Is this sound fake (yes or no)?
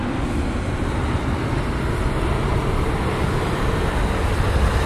yes